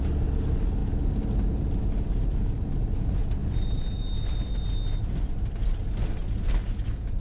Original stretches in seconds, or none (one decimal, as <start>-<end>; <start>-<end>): 0.0-7.2